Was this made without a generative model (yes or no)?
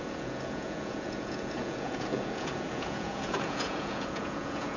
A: no